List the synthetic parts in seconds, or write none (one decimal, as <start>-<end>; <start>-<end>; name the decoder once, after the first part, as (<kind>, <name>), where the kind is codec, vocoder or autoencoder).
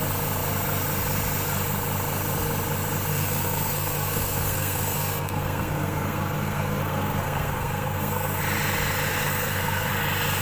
3.1-8.4 (codec, SNAC); 9.1-9.9